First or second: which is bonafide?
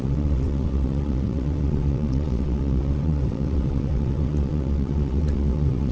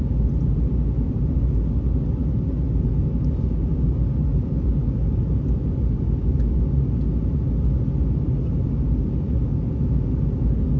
second